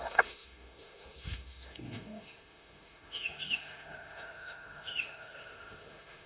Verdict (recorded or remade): remade